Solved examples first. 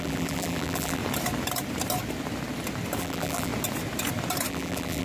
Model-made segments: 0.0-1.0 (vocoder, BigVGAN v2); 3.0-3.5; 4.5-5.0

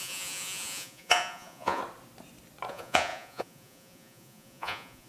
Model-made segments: 0.0-1.8 (vocoder, Vocos); 2.7-5.1